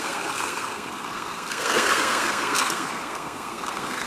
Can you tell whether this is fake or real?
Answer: fake